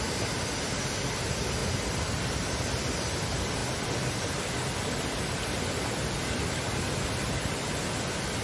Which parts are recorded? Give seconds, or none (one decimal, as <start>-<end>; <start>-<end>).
0.0-8.4